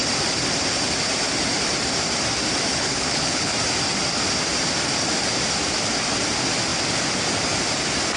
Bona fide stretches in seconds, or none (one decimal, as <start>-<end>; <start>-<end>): 0.0-2.7; 3.5-8.2